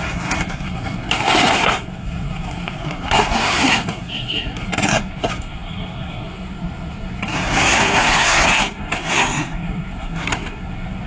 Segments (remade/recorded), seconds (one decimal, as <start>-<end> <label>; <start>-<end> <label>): 0.0-11.1 remade